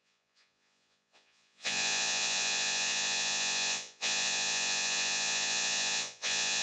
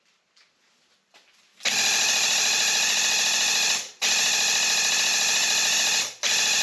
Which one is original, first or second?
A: second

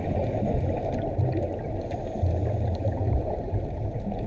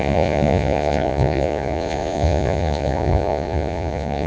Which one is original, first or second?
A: first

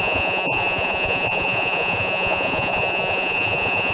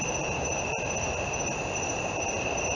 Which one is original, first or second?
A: second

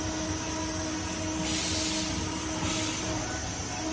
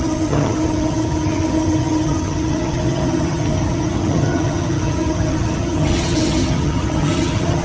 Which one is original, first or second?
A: first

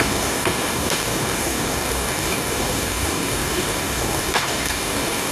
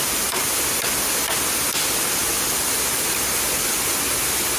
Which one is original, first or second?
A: second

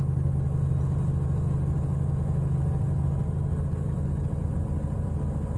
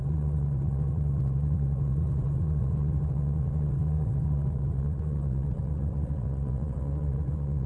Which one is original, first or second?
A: first